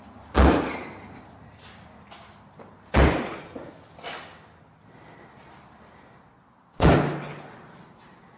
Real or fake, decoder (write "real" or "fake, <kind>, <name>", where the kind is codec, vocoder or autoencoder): real